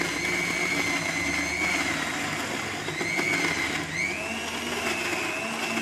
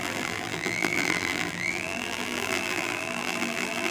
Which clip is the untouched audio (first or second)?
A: first